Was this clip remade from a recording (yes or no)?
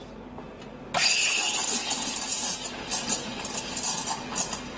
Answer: no